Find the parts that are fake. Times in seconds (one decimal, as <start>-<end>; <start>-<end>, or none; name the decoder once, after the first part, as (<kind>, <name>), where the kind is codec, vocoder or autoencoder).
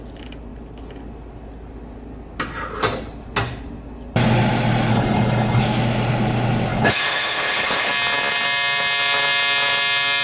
4.9-5.6 (codec, HILCodec); 6.7-7.9